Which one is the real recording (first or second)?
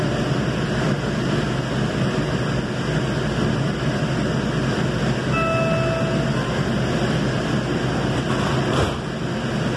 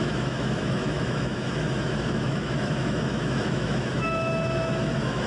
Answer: first